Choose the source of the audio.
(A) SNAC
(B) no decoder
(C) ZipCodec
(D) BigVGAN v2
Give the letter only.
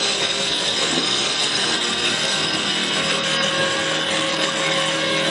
A